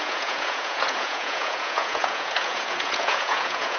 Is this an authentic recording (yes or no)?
no